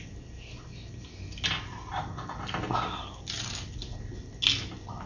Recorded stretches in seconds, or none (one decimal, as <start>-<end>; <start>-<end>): 0.0-5.1